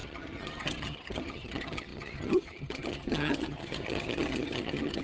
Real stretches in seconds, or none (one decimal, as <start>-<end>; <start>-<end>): none